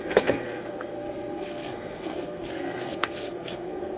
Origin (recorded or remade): remade